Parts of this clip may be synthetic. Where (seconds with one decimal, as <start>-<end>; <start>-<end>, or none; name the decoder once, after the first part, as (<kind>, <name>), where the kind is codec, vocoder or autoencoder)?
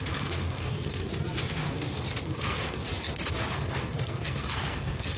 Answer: 0.0-1.1 (codec, SNAC); 2.2-2.9; 3.5-5.2